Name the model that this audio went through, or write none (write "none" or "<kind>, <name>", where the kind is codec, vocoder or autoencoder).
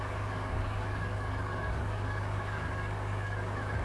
codec, DAC